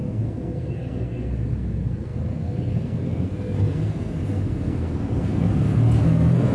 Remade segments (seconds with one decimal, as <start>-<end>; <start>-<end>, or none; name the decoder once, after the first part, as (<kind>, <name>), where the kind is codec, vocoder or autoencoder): 0.0-6.5 (codec, SNAC)